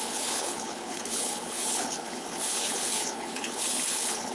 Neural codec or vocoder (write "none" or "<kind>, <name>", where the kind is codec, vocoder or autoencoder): codec, HILCodec